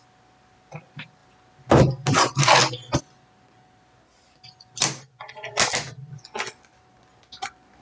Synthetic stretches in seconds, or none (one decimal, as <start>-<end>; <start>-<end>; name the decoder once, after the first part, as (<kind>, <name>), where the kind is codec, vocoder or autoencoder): none